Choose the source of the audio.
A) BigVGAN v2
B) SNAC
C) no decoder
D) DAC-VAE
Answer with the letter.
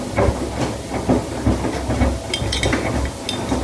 C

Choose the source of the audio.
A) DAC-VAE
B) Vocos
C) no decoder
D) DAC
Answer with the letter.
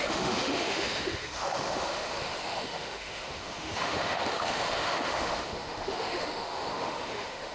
A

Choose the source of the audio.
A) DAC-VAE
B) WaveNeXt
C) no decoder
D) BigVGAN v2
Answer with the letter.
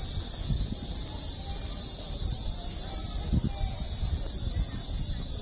C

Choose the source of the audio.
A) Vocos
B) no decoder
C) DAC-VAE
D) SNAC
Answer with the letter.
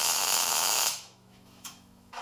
C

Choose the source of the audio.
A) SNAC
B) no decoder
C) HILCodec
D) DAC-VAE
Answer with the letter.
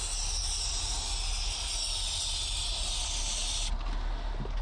B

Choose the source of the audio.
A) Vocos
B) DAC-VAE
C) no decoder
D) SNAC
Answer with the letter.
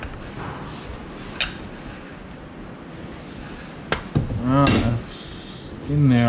C